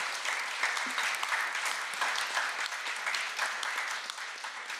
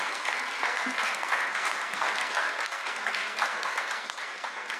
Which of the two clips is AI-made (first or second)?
second